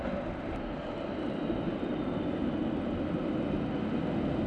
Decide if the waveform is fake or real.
real